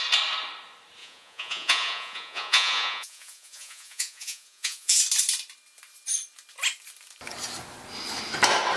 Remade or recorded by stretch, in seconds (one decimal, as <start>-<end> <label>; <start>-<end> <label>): 0.0-1.0 recorded; 1.0-5.0 remade; 5.0-8.8 recorded